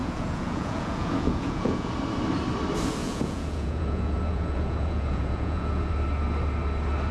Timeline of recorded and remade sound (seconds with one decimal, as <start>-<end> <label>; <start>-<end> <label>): 0.0-1.9 remade; 1.9-3.0 recorded; 3.0-5.9 remade; 5.9-7.1 recorded